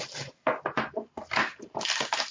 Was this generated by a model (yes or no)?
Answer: no